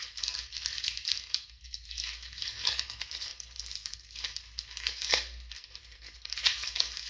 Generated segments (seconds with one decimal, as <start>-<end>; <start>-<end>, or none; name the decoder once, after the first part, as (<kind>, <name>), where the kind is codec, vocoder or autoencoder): 0.0-7.1 (codec, SNAC)